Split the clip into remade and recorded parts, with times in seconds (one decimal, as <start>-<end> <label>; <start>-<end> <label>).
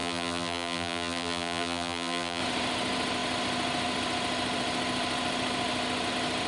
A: 0.0-2.4 remade; 2.4-6.5 recorded